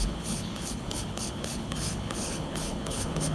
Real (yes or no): no